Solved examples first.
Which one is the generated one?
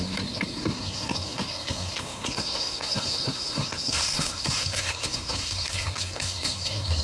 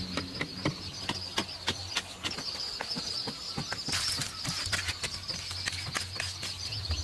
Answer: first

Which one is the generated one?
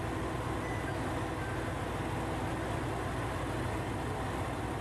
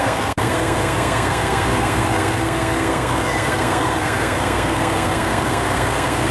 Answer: second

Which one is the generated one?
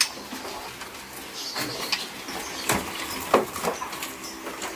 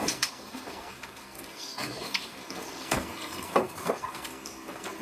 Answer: second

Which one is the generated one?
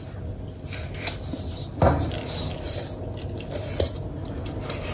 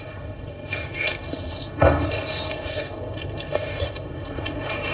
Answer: second